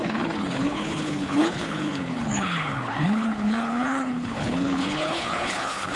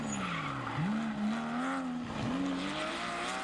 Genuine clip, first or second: second